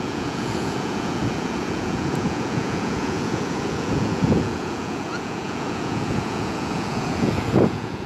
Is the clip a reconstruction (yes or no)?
yes